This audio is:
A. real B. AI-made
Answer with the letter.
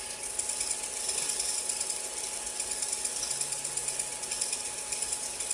A